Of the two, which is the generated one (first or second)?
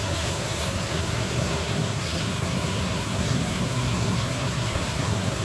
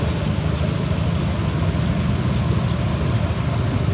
first